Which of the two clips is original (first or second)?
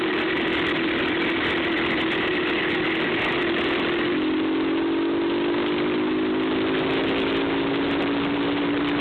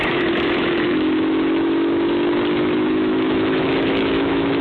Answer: first